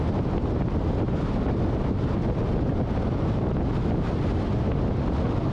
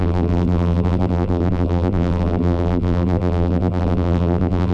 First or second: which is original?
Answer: first